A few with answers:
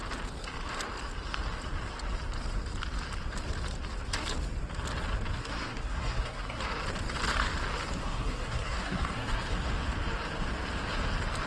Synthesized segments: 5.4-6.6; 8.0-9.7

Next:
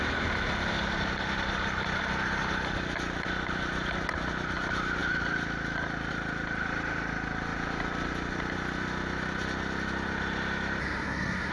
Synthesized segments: 10.8-11.5

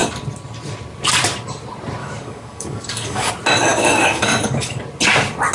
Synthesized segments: 2.0-3.3; 3.7-4.8

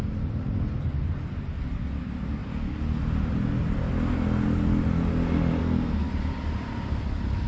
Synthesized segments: 5.6-6.1

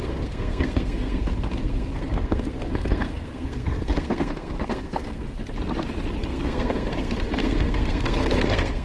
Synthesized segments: 0.0-5.4; 6.3-8.8

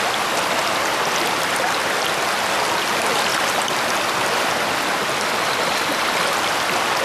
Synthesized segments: none